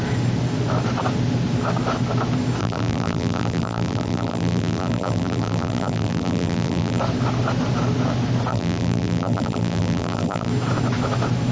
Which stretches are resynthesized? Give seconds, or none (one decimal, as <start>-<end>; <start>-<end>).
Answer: 2.6-7.0; 8.5-10.5